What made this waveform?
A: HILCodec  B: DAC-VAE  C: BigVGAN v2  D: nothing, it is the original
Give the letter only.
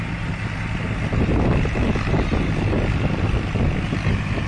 D